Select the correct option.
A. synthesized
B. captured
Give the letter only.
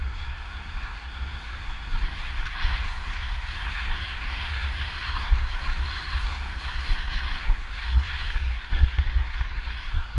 A